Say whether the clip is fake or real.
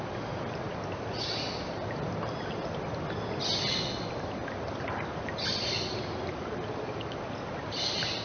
real